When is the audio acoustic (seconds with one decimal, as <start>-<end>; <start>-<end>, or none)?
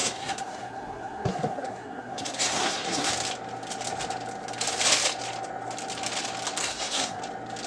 3.1-6.6; 7.2-7.7